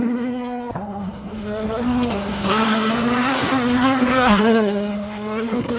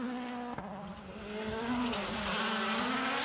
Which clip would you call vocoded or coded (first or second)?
first